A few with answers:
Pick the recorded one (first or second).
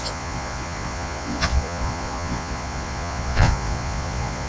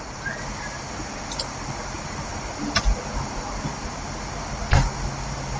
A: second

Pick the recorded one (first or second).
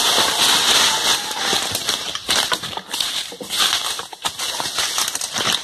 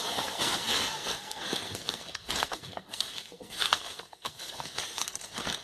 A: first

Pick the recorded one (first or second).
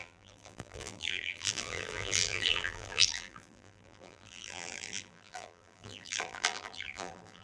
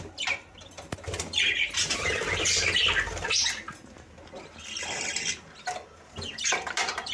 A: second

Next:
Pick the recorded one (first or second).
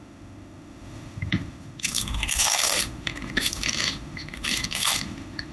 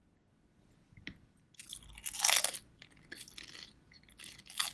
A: second